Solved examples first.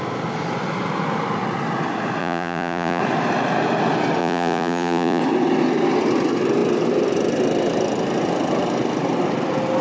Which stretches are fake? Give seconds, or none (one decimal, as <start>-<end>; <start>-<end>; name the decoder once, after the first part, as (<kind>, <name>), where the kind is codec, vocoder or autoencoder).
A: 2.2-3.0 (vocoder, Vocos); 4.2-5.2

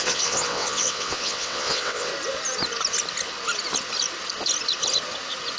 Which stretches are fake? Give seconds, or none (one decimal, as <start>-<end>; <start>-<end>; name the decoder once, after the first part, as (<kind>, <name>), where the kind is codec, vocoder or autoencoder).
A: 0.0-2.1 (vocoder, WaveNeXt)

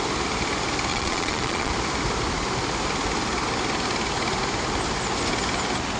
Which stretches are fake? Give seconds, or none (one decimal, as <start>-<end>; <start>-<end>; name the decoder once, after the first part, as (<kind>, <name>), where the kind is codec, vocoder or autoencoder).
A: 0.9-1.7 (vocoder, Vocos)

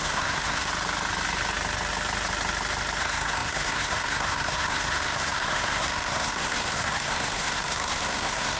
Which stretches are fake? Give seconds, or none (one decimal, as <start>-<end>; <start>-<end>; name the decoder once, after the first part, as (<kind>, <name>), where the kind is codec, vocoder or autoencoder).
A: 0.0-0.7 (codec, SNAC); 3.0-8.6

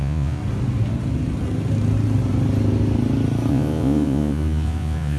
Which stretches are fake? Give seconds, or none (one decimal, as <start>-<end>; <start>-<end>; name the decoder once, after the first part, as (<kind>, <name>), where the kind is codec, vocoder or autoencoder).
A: 0.0-0.4 (vocoder, Vocos); 3.5-5.2

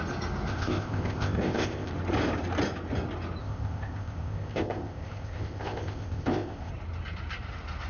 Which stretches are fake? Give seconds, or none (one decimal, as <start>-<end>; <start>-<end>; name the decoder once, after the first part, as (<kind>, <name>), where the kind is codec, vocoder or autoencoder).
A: 0.5-1.9 (codec, ZipCodec); 3.4-6.7

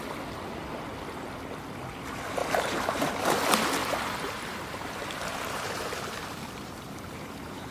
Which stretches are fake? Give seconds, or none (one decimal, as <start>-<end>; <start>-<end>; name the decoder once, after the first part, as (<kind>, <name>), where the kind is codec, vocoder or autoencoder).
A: 2.4-3.1 (vocoder, BigVGAN v2); 3.8-7.7

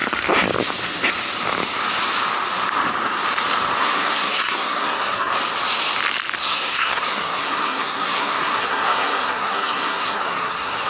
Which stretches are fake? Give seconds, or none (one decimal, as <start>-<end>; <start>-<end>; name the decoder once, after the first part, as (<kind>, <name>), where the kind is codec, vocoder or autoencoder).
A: 3.8-5.3 (codec, SNAC); 6.4-10.9